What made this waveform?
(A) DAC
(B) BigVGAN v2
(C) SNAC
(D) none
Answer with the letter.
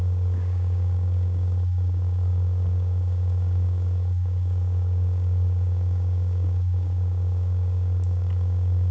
A